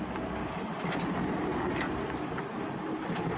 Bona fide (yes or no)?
yes